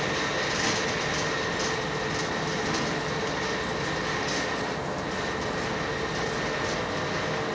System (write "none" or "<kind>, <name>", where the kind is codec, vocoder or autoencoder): none